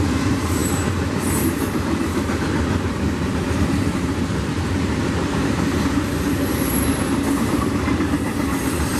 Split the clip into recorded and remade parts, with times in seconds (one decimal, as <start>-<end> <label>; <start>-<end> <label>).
0.0-6.9 remade; 6.9-7.4 recorded; 7.4-9.0 remade